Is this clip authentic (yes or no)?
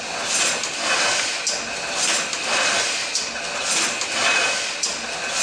yes